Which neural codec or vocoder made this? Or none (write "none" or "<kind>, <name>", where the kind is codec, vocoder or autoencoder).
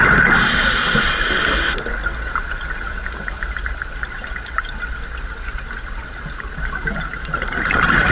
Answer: none